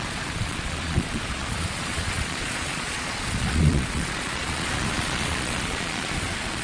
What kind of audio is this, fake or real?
fake